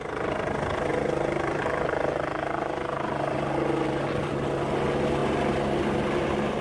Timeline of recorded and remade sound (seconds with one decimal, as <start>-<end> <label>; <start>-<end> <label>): 0.0-6.6 recorded